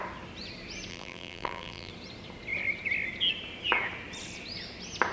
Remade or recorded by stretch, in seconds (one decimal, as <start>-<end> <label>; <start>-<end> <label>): 0.0-0.9 recorded; 0.9-1.9 remade; 1.9-5.1 recorded